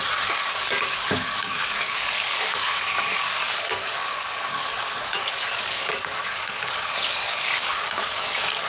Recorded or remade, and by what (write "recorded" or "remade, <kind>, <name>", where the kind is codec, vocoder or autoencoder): remade, codec, DAC